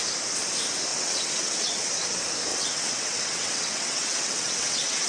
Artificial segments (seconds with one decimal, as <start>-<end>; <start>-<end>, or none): 0.9-1.9; 2.5-5.1